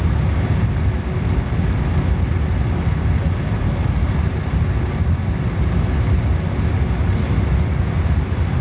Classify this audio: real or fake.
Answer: real